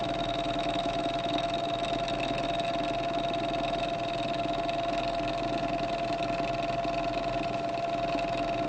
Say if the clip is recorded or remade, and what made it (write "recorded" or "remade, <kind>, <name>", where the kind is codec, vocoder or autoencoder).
recorded